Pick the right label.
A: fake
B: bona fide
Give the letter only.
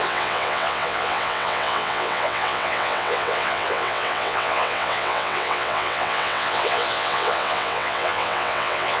A